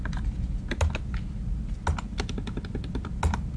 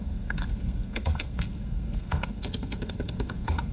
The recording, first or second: first